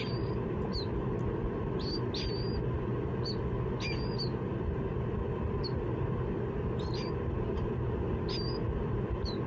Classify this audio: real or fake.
real